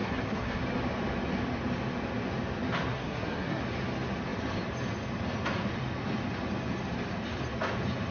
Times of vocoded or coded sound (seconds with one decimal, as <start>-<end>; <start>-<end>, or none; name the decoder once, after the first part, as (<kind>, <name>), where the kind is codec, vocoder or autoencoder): 0.0-0.6 (codec, SNAC); 2.9-3.6